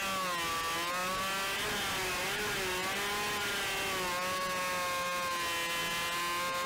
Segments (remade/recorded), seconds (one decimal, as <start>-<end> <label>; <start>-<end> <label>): 0.0-6.7 recorded